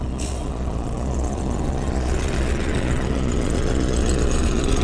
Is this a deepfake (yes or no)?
yes